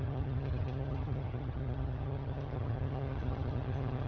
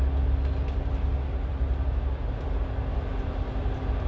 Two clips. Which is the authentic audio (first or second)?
second